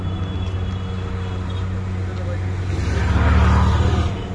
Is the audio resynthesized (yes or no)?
no